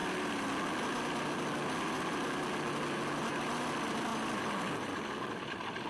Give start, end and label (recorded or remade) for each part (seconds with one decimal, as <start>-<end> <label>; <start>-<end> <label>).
0.0-5.9 recorded